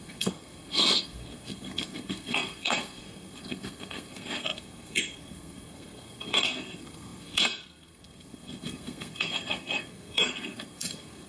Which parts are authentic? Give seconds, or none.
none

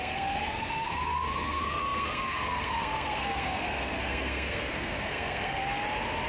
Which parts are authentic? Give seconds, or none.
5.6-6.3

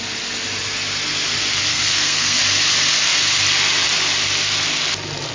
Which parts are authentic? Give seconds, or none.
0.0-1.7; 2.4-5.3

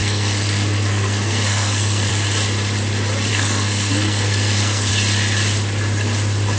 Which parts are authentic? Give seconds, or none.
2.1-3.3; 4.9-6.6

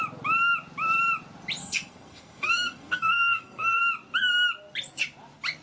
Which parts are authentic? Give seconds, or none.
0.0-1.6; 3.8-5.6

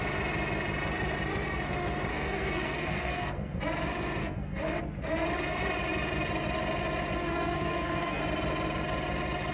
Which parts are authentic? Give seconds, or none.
0.0-2.1; 3.6-4.2; 4.8-7.2; 8.2-9.5